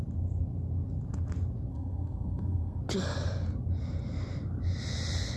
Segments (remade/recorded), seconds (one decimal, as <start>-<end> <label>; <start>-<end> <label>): 0.0-1.7 recorded; 1.7-2.8 remade; 2.8-5.4 recorded